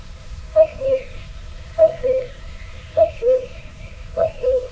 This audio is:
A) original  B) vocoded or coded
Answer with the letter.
B